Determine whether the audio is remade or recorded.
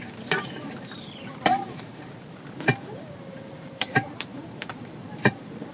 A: remade